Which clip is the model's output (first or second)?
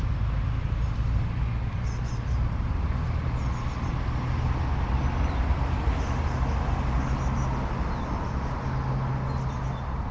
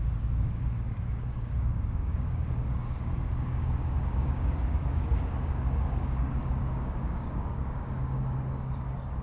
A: second